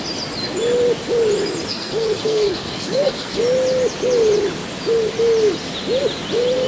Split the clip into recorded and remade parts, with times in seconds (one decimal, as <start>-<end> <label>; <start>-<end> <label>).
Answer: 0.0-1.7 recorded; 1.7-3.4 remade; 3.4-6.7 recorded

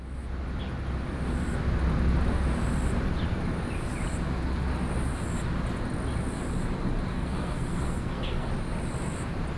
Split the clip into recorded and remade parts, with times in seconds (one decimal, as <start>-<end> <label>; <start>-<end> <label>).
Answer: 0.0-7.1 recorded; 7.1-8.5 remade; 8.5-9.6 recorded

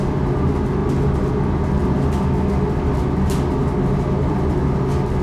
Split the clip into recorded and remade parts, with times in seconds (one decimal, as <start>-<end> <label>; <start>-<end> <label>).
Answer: 0.0-5.2 recorded